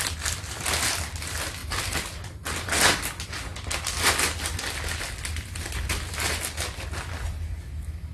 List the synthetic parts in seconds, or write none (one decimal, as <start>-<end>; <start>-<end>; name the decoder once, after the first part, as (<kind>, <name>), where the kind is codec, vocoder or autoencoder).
none